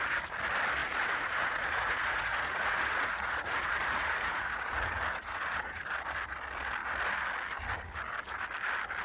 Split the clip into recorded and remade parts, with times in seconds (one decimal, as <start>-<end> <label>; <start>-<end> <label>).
0.0-0.8 recorded; 0.8-5.8 remade; 5.8-9.0 recorded